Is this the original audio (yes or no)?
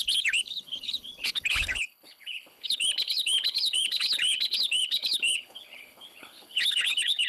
no